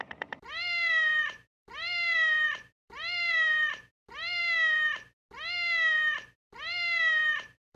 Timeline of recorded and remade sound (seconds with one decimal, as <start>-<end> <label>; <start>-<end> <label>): 0.0-4.4 remade; 4.4-6.5 recorded; 6.5-7.8 remade